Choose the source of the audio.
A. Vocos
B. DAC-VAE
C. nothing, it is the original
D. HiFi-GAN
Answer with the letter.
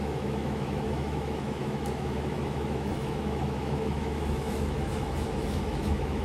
B